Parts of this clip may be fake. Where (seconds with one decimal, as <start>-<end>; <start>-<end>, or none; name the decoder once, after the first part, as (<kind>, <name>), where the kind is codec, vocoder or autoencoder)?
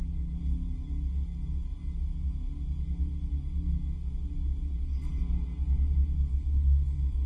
6.3-7.3 (codec, SNAC)